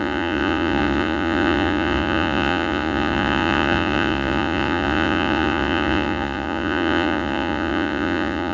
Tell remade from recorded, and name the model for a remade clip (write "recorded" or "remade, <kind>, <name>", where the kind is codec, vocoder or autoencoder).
remade, vocoder, Vocos